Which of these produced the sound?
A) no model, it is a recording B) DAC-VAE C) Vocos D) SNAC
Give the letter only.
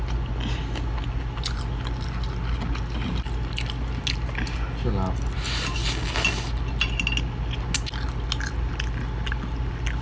A